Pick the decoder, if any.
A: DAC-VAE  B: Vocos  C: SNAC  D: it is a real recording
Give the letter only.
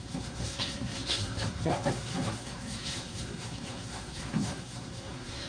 C